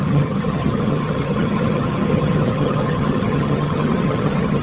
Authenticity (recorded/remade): remade